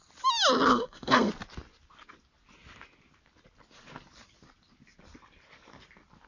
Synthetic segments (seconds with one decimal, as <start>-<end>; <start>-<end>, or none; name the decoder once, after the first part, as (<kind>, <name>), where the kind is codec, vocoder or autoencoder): 0.7-1.3 (codec, SNAC)